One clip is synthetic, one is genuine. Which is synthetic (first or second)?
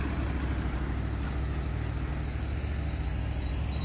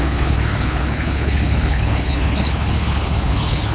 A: second